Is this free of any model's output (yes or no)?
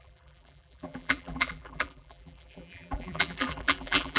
no